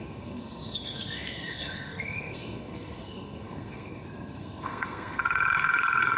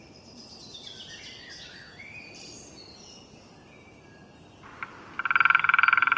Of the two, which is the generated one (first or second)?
first